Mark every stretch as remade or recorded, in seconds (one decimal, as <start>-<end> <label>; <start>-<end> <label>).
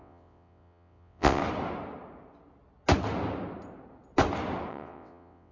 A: 0.0-1.4 remade; 1.4-4.7 recorded; 4.7-5.5 remade